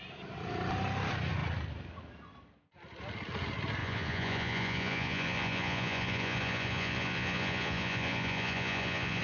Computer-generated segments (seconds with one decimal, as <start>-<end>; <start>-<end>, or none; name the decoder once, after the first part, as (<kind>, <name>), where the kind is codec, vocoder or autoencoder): 3.8-9.2 (vocoder, Vocos)